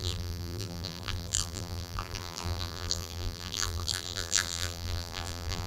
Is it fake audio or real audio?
fake